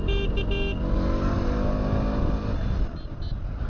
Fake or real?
real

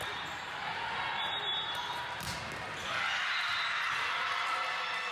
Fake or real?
real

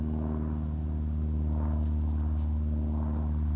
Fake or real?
real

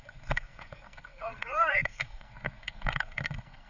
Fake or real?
fake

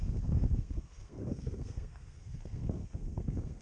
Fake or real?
fake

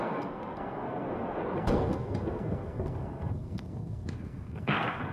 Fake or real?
fake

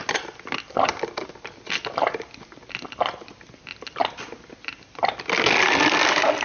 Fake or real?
real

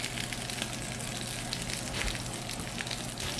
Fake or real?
real